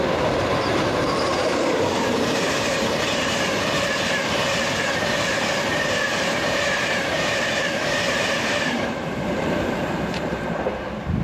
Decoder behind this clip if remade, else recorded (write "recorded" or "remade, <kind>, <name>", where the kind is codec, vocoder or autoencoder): remade, vocoder, BigVGAN v2